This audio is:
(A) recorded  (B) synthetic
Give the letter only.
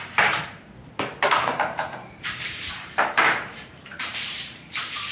B